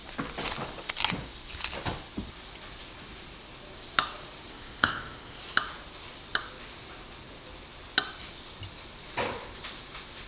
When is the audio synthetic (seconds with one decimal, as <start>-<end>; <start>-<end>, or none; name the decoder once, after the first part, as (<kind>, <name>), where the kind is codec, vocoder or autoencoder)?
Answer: 4.5-5.4 (codec, ZipCodec)